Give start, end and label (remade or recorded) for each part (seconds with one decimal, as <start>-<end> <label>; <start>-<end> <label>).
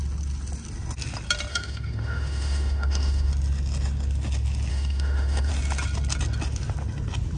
0.0-1.5 recorded; 1.5-3.3 remade; 3.3-4.7 recorded; 4.7-5.5 remade; 5.5-7.4 recorded